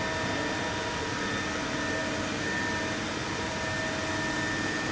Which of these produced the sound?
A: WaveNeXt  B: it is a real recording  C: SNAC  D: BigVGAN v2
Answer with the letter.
B